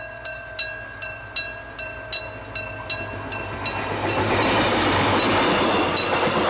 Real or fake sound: real